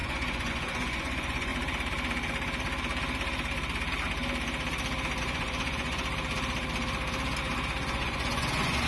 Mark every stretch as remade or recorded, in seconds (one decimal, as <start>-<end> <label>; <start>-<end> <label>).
0.0-1.5 remade; 1.5-5.2 recorded; 5.2-6.0 remade; 6.0-7.8 recorded; 7.8-8.9 remade